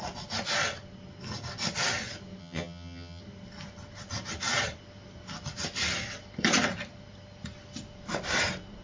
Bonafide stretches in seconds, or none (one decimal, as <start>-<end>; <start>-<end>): 0.0-2.4; 3.2-8.8